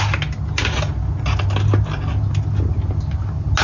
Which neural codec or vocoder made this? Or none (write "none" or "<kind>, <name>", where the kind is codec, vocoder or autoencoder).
none